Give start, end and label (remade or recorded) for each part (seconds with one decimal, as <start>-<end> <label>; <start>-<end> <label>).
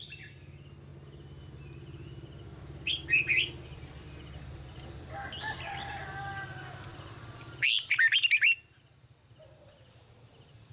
0.0-10.7 recorded